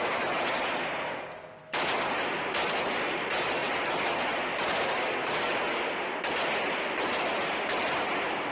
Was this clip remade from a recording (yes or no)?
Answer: no